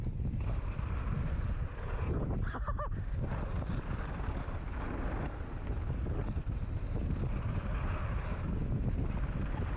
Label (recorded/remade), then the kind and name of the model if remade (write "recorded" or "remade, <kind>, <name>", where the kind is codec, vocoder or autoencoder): recorded